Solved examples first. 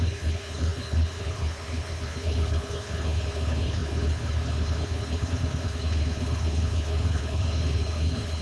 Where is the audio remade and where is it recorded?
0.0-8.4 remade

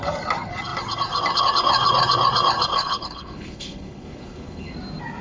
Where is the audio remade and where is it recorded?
0.0-2.7 recorded; 2.7-4.7 remade; 4.7-5.2 recorded